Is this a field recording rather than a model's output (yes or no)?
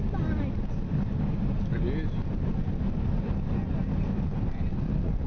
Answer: yes